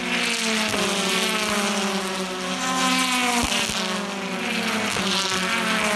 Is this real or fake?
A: real